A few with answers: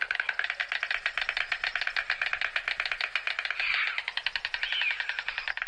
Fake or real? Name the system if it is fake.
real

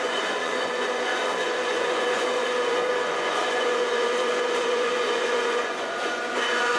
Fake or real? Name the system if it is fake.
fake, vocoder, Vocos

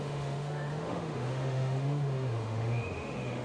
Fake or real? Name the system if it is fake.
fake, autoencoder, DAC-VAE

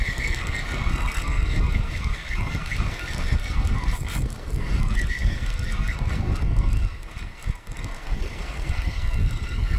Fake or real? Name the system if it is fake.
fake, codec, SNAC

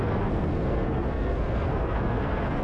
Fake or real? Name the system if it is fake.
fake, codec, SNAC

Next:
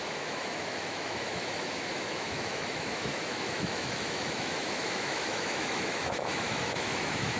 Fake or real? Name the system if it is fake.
fake, autoencoder, DAC-VAE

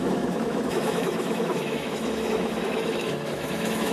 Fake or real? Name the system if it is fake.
fake, autoencoder, DAC-VAE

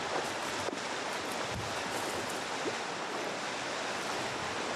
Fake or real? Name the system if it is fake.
real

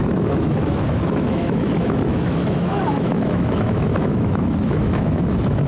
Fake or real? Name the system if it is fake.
fake, autoencoder, DAC-VAE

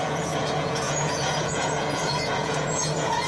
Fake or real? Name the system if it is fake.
fake, vocoder, Vocos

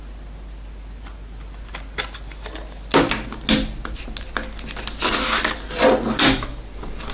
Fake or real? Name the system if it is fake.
real